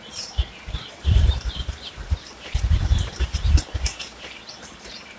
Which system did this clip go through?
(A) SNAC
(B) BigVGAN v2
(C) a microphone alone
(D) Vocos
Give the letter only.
B